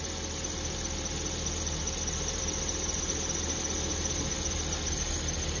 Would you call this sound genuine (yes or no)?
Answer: yes